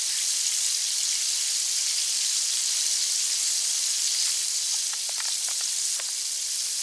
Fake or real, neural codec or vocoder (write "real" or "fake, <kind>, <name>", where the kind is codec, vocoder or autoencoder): real